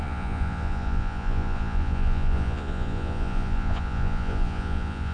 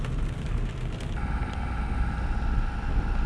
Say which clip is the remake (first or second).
first